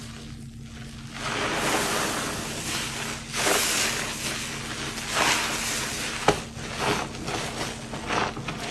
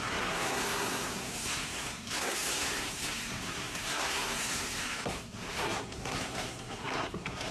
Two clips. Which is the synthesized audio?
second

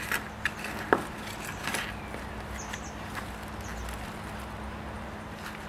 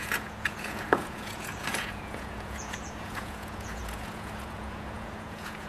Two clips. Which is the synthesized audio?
second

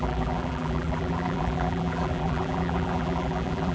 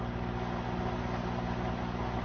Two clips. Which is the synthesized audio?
first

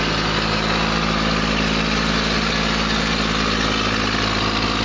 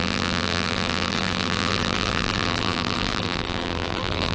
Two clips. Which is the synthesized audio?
second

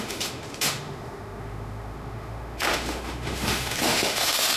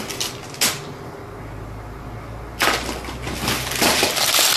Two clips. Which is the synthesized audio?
first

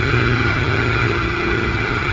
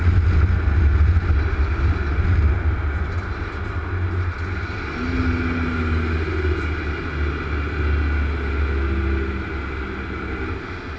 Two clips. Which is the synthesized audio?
first